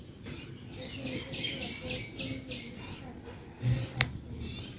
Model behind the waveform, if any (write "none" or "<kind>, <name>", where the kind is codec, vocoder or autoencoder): none